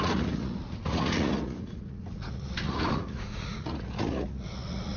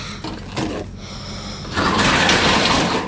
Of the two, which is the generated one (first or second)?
first